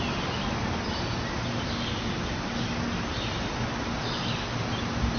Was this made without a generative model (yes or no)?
yes